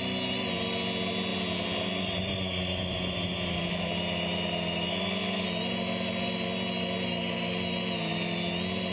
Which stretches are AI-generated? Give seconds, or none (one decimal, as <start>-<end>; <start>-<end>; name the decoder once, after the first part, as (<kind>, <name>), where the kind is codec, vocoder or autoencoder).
none